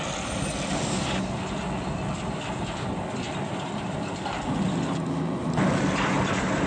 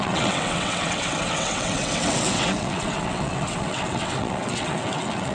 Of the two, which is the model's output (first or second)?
second